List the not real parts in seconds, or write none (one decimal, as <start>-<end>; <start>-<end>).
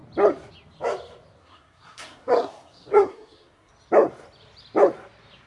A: 1.4-3.7